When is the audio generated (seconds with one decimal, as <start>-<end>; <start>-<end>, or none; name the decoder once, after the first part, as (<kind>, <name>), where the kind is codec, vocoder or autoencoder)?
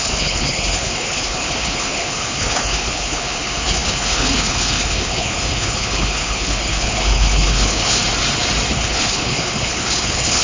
0.0-8.0 (codec, HILCodec); 8.7-10.4